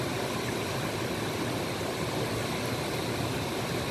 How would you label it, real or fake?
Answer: real